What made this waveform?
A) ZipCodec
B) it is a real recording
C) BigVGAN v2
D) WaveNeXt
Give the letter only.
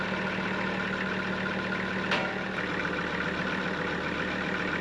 B